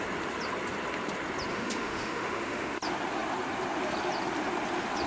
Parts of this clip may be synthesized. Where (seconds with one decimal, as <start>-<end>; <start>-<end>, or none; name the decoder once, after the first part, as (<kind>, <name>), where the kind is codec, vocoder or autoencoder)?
1.5-2.8 (autoencoder, DAC-VAE)